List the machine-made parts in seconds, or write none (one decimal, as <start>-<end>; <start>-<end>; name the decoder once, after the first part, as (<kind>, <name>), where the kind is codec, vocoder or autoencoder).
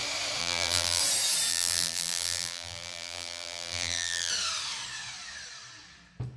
0.4-1.0 (vocoder, BigVGAN v2); 1.5-4.3